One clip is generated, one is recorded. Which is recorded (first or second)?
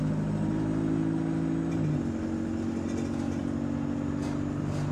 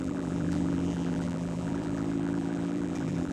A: first